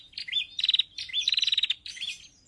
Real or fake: real